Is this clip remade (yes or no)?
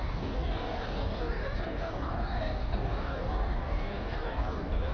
yes